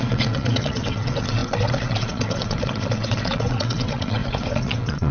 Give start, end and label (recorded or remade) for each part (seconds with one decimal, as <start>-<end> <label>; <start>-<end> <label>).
0.0-5.1 remade